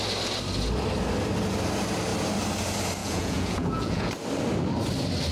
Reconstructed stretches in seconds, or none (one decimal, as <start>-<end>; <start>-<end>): 3.0-4.1